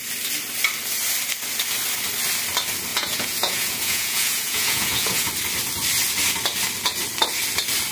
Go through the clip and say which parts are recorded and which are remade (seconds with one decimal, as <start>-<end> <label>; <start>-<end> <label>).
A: 0.0-2.9 recorded; 2.9-5.3 remade; 5.3-7.9 recorded